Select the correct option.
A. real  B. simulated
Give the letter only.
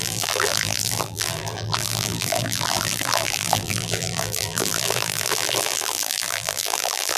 B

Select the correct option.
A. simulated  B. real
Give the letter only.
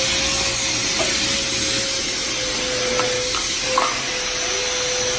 B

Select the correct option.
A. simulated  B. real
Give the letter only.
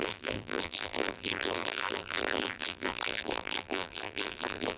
A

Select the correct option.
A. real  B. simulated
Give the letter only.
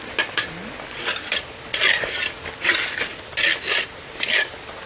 A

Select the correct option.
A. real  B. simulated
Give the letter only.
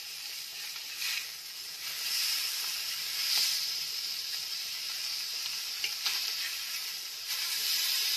B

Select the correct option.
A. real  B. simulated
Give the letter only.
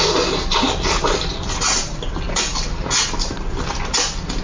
A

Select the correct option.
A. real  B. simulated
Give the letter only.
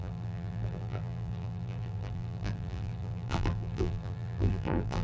B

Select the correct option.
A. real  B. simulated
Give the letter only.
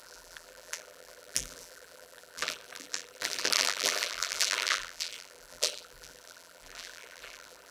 B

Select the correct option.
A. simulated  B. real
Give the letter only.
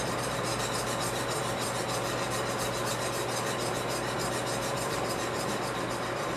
A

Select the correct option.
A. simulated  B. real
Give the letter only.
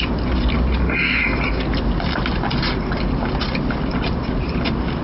B